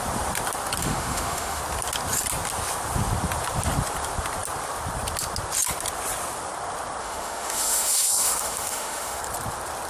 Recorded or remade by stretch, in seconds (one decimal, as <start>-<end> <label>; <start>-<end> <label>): 0.0-0.8 recorded; 0.8-1.6 remade; 1.6-7.0 recorded; 7.0-9.2 remade; 9.2-9.9 recorded